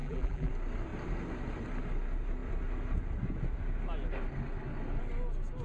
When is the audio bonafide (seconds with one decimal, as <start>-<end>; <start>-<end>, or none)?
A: 0.5-5.6